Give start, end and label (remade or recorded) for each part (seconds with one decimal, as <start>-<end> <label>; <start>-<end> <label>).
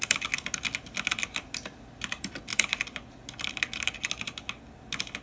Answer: 0.0-5.2 recorded